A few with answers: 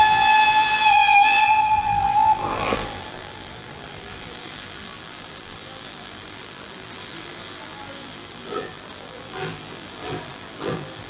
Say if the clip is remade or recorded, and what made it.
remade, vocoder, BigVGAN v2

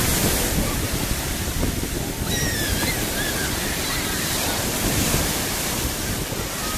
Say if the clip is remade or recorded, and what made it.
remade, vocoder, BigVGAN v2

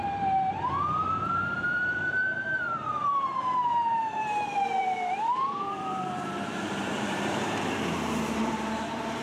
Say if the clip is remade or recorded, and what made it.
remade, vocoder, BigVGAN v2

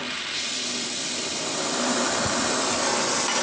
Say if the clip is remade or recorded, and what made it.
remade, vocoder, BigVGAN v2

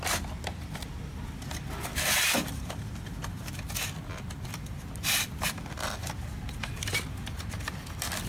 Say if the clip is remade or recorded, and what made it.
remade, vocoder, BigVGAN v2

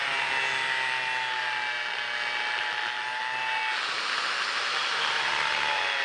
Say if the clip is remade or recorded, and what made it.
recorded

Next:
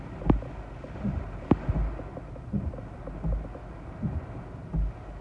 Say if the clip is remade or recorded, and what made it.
recorded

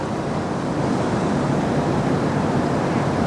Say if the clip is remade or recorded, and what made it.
remade, vocoder, BigVGAN v2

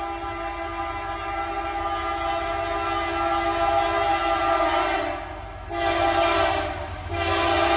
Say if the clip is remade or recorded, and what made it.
recorded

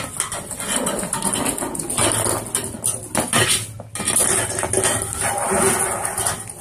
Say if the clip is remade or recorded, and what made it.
recorded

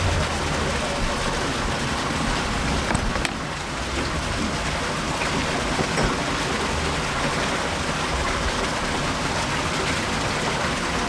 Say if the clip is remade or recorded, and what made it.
recorded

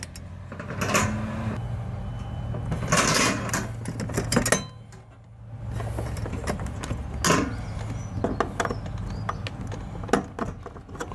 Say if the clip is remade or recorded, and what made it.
recorded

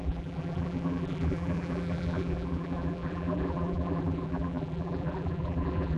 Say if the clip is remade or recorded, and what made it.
remade, vocoder, BigVGAN v2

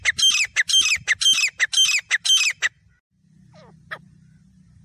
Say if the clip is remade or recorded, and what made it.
recorded